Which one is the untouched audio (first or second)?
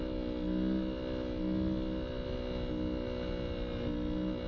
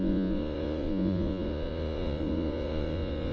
first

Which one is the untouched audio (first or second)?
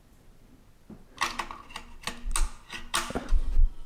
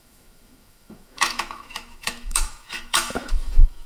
first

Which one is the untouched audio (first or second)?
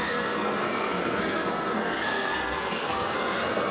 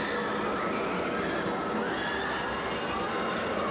second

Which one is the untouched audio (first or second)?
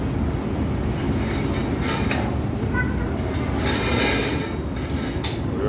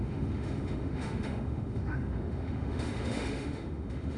first